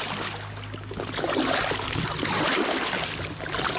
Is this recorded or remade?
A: recorded